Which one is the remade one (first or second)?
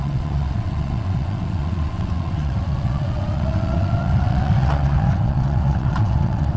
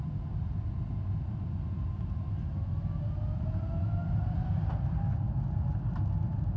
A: first